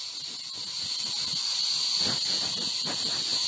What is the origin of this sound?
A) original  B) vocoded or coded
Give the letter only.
A